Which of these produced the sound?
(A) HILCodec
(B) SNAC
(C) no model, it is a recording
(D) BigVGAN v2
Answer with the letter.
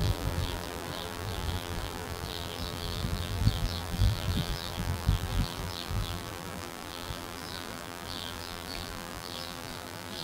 D